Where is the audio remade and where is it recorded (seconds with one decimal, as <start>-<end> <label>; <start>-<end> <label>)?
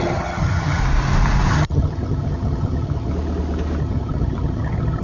0.0-0.8 remade; 0.8-1.5 recorded; 1.5-3.1 remade; 3.1-3.8 recorded; 3.8-5.0 remade